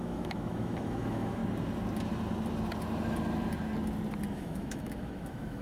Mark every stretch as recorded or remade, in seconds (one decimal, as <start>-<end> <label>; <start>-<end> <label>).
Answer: 0.0-1.4 remade; 1.4-4.3 recorded; 4.3-5.6 remade